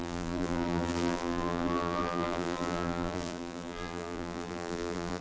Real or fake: fake